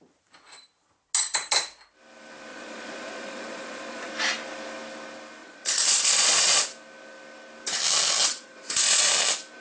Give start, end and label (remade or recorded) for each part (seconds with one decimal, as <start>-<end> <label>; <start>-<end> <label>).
0.0-2.5 recorded; 2.5-4.1 remade; 4.1-5.4 recorded; 5.4-6.6 remade; 6.6-8.2 recorded; 8.2-9.1 remade; 9.1-9.6 recorded